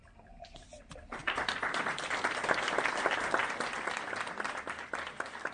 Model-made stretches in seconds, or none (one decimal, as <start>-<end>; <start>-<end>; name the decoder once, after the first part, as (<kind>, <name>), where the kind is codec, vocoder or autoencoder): none